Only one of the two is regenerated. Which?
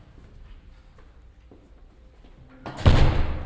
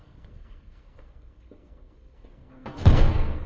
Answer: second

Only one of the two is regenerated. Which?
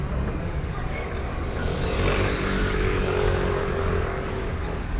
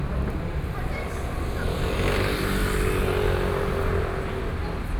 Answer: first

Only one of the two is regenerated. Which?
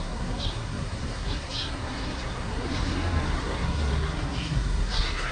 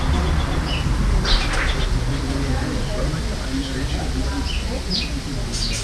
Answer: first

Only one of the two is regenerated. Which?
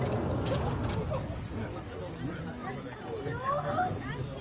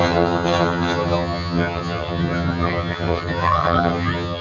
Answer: second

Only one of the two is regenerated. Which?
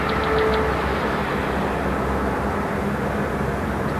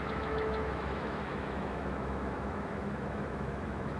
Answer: second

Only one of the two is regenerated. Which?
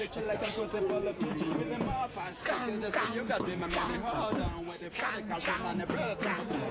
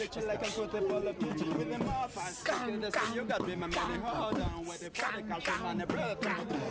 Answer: first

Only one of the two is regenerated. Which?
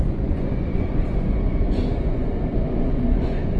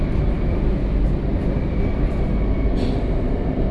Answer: first